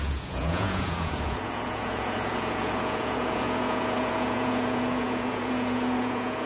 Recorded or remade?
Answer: remade